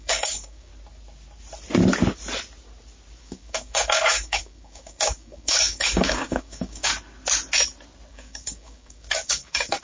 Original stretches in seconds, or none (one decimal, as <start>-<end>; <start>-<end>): 0.7-3.2; 6.9-8.1